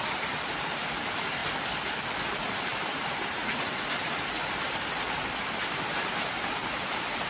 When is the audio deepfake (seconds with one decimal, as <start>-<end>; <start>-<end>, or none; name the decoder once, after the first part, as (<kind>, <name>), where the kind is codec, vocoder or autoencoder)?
0.0-1.4 (vocoder, BigVGAN v2); 2.2-7.3